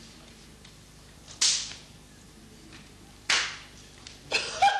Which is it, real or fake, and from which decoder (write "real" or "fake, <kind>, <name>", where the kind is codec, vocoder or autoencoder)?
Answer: real